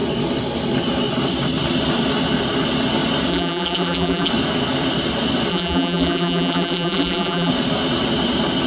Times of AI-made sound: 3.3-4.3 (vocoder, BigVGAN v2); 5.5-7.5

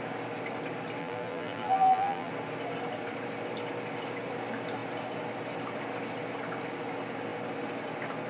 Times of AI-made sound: 1.0-2.3 (vocoder, BigVGAN v2)

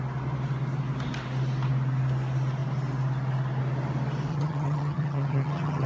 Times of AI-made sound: 4.3-5.9 (vocoder, HiFi-GAN)